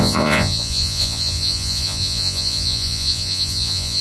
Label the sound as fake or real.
fake